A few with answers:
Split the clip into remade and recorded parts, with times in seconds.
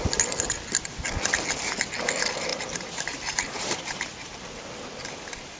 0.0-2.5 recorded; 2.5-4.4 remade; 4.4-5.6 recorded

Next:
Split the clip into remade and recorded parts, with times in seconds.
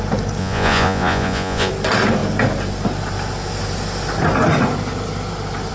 0.0-0.4 recorded; 0.4-1.7 remade; 1.7-5.7 recorded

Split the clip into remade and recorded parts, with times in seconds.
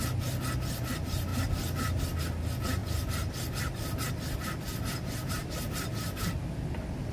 0.0-1.3 recorded; 1.3-2.0 remade; 2.0-5.4 recorded; 5.4-6.3 remade; 6.3-7.1 recorded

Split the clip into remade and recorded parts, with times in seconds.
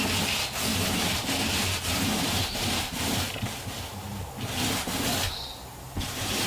0.0-0.7 recorded; 0.7-4.3 remade; 4.3-5.5 recorded; 5.5-6.5 remade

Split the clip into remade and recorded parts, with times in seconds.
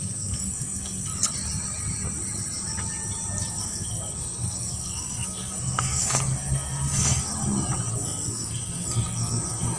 0.0-1.1 remade; 1.1-3.5 recorded; 3.5-7.3 remade; 7.3-7.9 recorded; 7.9-9.8 remade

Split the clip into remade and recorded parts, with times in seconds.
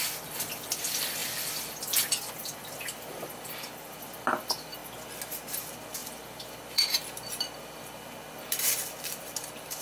0.0-4.8 remade; 4.8-5.5 recorded; 5.5-9.8 remade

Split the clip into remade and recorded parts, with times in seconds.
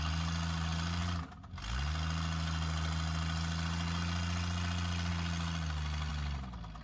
0.0-6.8 recorded